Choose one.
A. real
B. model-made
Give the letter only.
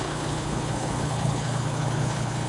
B